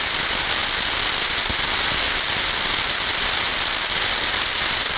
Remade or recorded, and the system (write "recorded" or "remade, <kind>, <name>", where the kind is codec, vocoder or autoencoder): recorded